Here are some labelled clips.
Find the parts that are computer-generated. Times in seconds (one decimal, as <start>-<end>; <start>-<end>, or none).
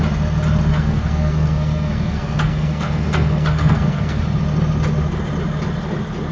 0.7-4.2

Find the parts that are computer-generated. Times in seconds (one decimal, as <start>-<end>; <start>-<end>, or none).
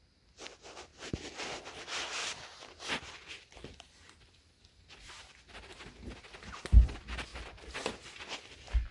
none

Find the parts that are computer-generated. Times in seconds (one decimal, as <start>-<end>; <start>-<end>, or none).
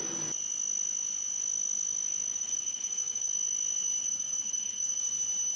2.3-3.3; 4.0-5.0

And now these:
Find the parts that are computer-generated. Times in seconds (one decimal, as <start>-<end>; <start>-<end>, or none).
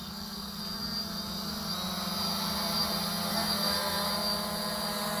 0.0-0.6; 3.3-4.1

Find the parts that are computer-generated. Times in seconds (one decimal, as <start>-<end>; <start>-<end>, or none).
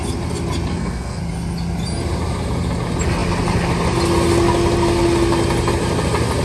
0.7-1.2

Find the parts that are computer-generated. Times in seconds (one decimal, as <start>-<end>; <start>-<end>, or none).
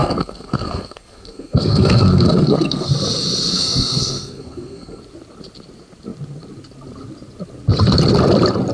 0.0-2.9; 3.5-5.0